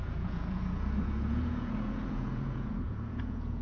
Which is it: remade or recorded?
remade